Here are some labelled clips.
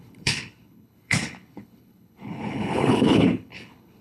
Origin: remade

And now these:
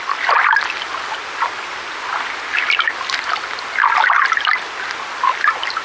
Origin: recorded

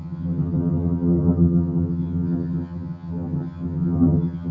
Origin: remade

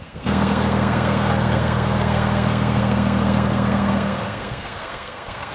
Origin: remade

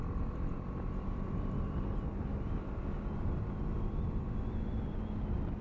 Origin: recorded